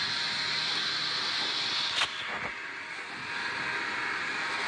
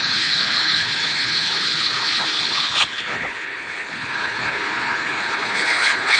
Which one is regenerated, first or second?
second